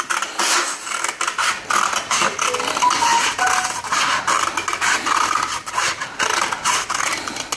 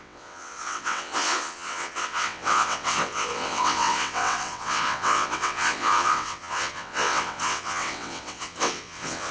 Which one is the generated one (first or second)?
second